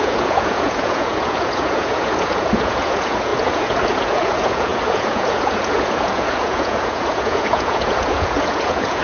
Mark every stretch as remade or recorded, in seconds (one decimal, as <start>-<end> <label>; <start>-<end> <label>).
0.0-9.0 remade